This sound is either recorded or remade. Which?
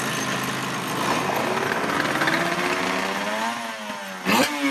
recorded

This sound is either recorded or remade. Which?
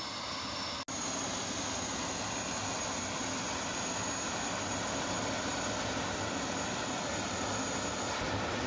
recorded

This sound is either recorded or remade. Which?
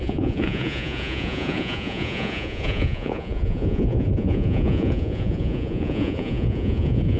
remade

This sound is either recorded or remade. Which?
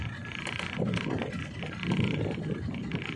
recorded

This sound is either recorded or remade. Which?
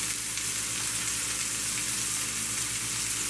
recorded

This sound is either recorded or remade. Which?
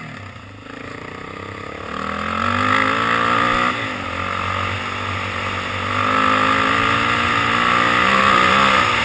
recorded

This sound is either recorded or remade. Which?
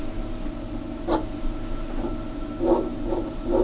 recorded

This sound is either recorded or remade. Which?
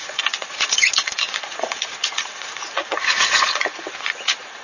remade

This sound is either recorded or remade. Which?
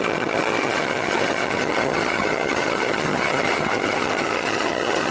remade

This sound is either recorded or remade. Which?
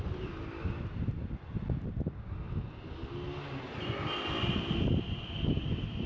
recorded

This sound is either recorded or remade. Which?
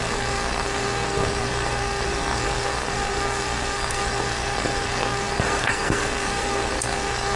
remade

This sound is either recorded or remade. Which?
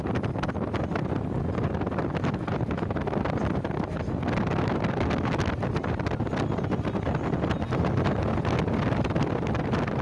recorded